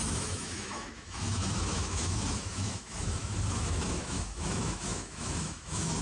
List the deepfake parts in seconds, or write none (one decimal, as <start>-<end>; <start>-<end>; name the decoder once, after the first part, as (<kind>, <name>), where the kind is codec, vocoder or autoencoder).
0.0-6.0 (autoencoder, DAC-VAE)